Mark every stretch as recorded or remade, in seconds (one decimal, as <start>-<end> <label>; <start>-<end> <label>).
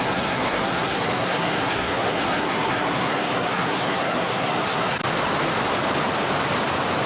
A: 0.0-5.0 remade; 5.0-7.1 recorded